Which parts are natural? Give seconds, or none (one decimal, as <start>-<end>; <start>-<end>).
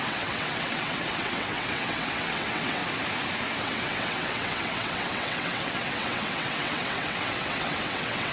2.8-3.6